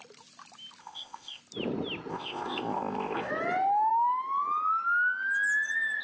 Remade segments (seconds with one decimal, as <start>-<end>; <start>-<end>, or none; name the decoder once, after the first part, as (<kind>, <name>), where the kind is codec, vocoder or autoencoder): 0.8-1.4 (codec, ZipCodec); 2.1-3.3